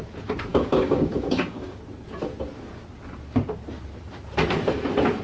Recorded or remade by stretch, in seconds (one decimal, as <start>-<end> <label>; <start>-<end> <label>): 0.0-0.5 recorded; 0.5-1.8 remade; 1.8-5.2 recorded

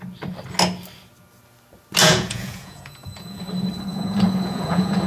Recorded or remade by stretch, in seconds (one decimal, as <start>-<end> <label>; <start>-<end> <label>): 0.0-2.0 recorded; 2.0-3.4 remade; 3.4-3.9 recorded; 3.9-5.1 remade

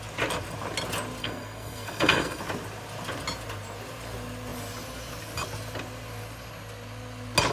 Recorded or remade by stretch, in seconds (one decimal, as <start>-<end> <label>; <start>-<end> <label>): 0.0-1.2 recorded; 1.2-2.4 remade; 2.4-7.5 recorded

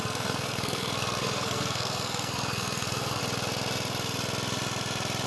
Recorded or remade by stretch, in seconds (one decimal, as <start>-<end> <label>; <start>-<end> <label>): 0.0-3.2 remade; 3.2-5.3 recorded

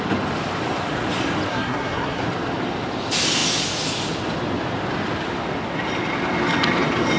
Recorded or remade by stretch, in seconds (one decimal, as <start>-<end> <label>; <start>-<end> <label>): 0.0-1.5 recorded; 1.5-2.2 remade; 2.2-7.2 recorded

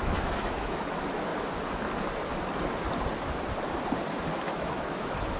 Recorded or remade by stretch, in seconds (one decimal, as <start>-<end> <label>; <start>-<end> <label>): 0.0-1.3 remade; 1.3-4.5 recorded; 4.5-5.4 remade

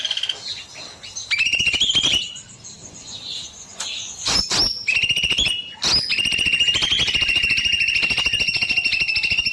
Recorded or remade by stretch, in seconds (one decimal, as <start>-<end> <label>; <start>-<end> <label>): 0.0-2.8 recorded; 2.8-4.4 remade; 4.4-9.5 recorded

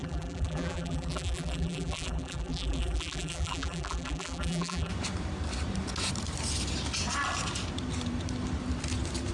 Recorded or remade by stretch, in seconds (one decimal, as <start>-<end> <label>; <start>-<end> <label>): 0.0-4.9 remade; 4.9-9.3 recorded